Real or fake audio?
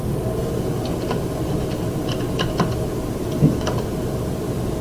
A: real